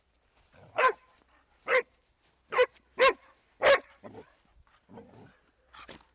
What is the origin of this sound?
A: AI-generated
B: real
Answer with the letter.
B